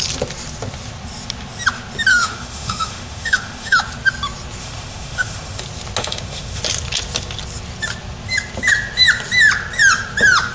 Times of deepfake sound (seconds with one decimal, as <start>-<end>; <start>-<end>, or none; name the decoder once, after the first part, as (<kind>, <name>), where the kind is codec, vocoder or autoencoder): 2.1-3.8 (autoencoder, DAC-VAE); 4.6-5.6; 6.0-6.6